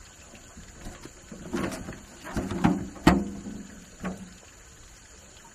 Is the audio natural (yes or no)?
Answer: yes